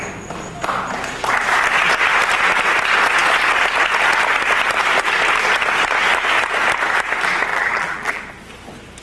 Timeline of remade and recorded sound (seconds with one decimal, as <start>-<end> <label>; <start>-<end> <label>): 0.0-7.5 recorded; 7.5-8.2 remade; 8.2-9.0 recorded